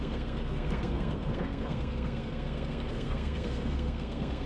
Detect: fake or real fake